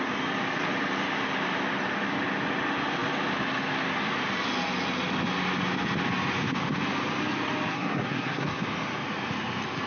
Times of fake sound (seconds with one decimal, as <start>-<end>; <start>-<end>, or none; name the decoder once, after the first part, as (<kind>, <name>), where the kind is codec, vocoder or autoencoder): 7.7-8.6 (codec, SNAC)